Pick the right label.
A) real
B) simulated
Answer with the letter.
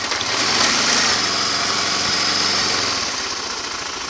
A